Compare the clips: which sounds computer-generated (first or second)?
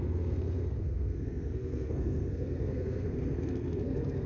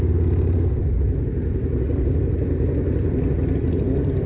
first